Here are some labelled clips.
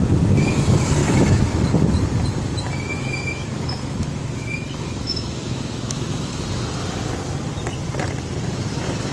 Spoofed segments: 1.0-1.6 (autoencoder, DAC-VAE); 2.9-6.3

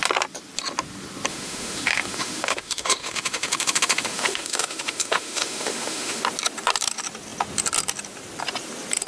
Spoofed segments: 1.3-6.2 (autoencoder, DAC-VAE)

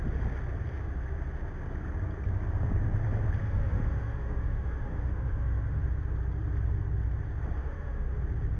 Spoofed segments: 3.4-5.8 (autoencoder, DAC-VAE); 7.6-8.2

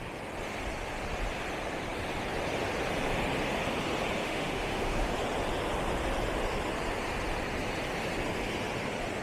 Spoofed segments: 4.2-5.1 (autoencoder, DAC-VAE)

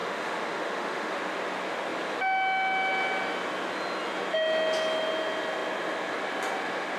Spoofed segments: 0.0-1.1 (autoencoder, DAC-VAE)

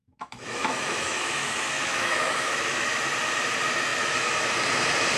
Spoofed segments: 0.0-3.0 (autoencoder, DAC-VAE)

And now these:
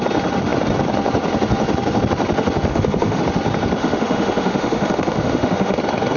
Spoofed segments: 2.7-3.2 (autoencoder, DAC-VAE); 3.8-5.8